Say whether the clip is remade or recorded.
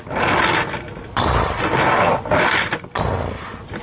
recorded